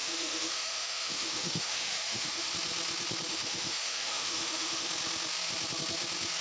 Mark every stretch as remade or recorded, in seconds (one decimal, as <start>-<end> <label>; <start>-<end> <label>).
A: 0.0-2.5 remade; 2.5-3.3 recorded; 3.3-4.9 remade; 4.9-6.4 recorded